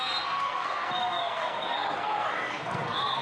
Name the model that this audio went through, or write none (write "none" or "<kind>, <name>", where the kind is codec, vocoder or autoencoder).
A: codec, SNAC